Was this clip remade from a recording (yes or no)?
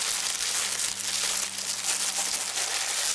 no